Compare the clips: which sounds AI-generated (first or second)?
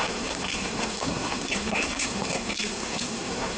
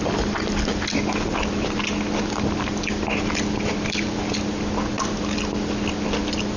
first